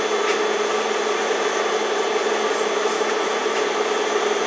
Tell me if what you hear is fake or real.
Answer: real